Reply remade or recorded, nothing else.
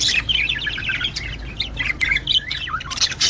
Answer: recorded